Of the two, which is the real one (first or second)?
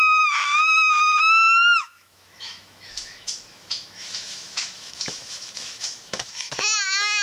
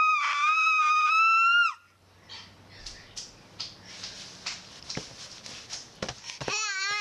second